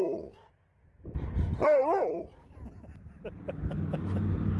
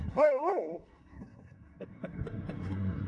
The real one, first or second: first